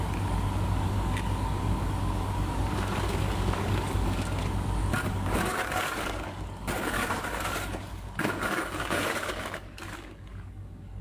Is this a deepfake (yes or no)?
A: yes